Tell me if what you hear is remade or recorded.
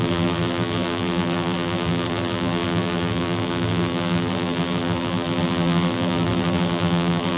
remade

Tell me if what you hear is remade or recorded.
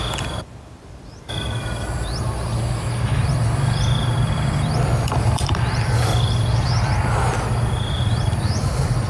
remade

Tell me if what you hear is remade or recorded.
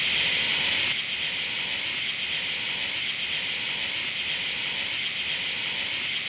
recorded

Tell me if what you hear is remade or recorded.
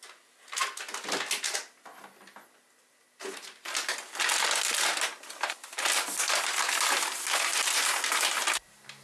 recorded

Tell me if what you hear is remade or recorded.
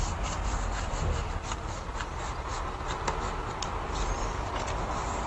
remade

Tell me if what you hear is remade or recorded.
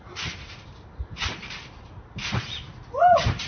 remade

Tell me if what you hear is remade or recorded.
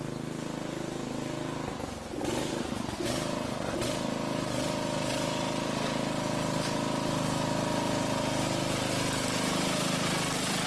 recorded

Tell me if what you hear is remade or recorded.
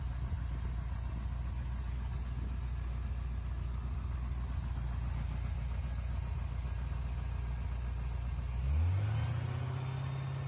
recorded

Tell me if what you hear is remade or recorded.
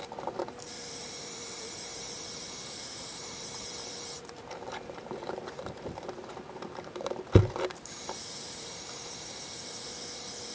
remade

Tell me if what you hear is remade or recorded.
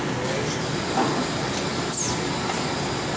recorded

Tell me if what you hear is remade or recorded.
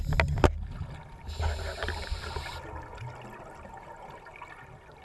recorded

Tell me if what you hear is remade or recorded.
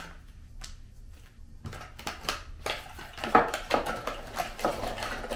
recorded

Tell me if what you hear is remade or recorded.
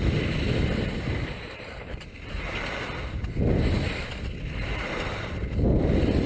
recorded